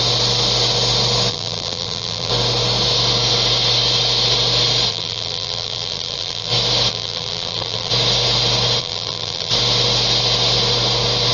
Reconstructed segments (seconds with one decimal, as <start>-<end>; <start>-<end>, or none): 1.3-2.3; 4.9-6.5; 6.9-7.9; 8.8-9.5

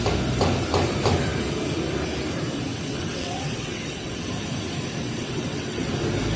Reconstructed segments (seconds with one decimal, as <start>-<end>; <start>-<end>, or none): 2.7-4.3; 5.0-5.9

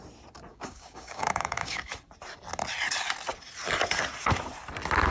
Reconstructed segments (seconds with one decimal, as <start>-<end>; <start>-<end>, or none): 0.5-1.9